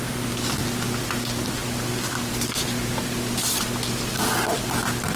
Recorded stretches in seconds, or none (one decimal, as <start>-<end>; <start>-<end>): 0.0-5.2